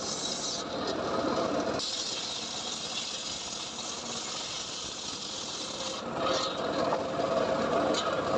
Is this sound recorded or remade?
recorded